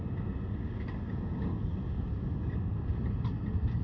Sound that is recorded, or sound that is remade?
recorded